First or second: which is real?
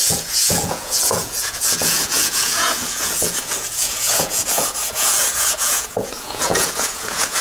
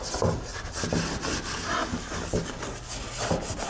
second